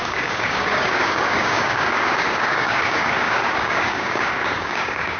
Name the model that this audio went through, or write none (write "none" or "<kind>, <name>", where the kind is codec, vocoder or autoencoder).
codec, DAC